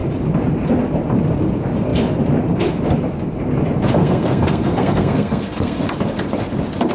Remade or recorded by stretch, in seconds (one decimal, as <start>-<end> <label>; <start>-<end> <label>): 0.0-4.0 recorded; 4.0-5.8 remade; 5.8-6.9 recorded

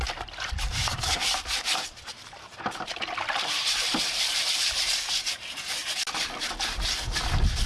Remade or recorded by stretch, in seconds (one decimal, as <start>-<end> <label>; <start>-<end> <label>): 0.0-5.8 remade; 5.8-7.7 recorded

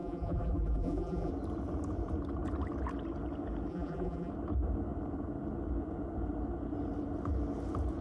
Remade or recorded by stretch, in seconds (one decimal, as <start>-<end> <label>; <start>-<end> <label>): 0.0-1.3 remade; 1.3-3.7 recorded; 3.7-4.3 remade; 4.3-8.0 recorded

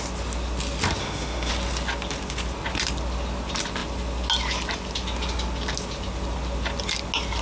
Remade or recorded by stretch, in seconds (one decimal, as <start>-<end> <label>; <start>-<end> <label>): 0.0-1.0 recorded; 1.0-1.5 remade; 1.5-7.4 recorded